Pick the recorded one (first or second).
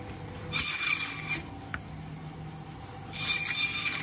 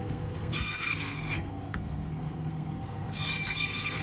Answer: first